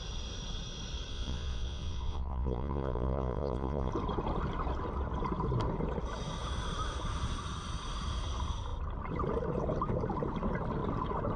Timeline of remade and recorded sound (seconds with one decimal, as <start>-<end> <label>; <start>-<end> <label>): 0.0-1.1 recorded; 1.1-3.9 remade; 3.9-11.4 recorded